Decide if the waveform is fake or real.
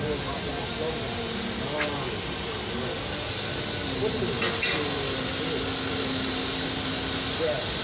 real